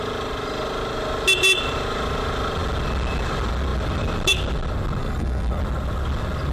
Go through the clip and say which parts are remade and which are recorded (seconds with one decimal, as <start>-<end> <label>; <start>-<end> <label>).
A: 0.0-5.0 recorded; 5.0-5.6 remade; 5.6-6.5 recorded

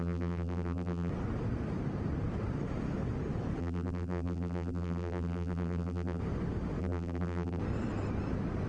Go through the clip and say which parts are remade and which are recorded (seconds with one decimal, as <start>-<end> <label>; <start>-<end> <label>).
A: 0.0-1.1 remade; 1.1-3.6 recorded; 3.6-6.2 remade; 6.2-6.8 recorded; 6.8-7.6 remade; 7.6-8.7 recorded

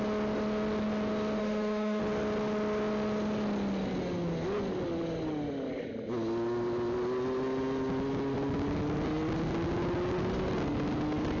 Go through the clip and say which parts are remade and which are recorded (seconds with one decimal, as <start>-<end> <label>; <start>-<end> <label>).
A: 0.0-1.4 recorded; 1.4-2.0 remade; 2.0-11.4 recorded